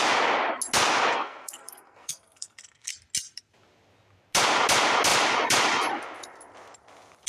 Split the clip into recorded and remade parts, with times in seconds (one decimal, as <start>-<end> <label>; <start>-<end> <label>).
0.0-1.1 recorded; 1.1-2.9 remade; 2.9-7.3 recorded